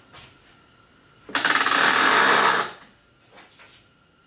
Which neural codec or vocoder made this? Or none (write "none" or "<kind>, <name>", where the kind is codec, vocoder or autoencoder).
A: none